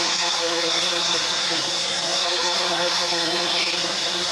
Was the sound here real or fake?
fake